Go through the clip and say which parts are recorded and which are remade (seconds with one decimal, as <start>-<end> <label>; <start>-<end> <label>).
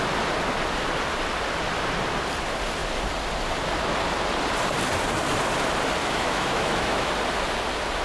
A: 0.0-6.0 recorded; 6.0-7.1 remade; 7.1-8.0 recorded